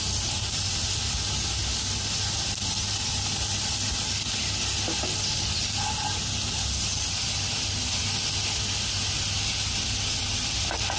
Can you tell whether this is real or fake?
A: real